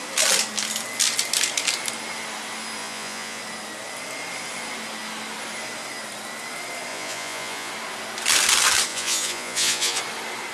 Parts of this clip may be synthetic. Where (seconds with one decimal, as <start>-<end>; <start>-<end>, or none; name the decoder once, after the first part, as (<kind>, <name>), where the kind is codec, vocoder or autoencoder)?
2.8-3.4 (vocoder, Vocos); 6.9-7.7; 8.9-10.0